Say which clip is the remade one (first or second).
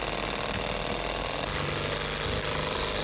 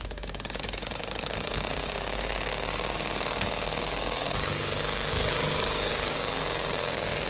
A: second